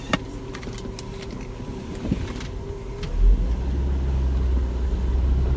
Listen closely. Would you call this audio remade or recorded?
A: recorded